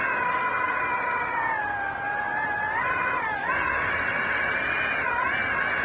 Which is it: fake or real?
real